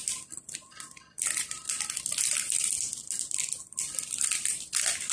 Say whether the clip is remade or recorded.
recorded